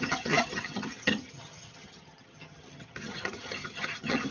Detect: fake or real fake